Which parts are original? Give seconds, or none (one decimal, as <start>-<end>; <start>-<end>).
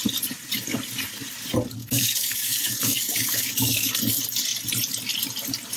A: 0.0-1.8; 3.9-5.8